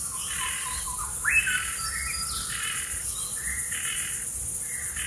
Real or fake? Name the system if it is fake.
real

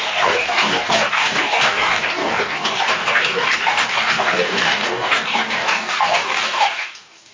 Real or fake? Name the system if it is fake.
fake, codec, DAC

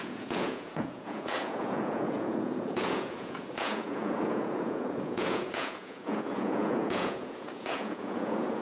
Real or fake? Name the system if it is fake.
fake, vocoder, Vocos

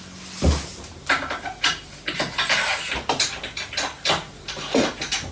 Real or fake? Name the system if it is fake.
real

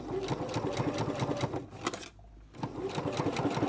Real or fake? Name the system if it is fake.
real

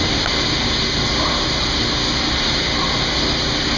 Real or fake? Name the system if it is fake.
real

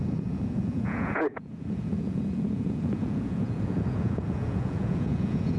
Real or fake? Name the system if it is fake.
fake, vocoder, Vocos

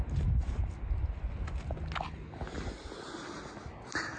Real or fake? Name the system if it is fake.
real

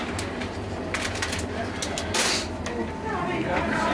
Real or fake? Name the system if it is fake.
real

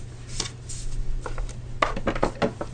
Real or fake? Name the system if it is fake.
real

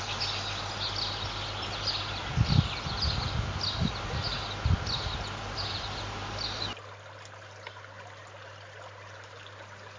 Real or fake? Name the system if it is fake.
real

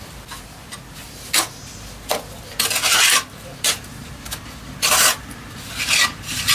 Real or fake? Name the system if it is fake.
real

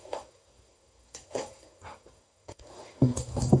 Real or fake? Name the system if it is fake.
fake, codec, SNAC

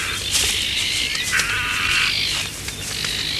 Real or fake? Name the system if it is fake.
real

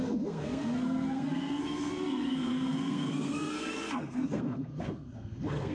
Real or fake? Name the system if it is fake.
fake, codec, SNAC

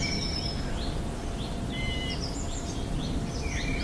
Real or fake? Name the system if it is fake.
real